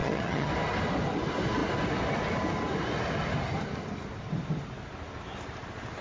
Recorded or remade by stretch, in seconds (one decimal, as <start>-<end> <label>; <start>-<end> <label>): 0.0-0.5 remade; 0.5-6.0 recorded